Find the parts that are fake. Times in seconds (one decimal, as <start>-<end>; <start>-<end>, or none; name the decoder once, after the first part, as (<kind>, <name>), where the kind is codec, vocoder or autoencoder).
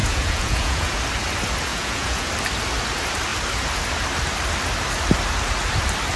0.0-1.0 (vocoder, Vocos); 1.7-2.3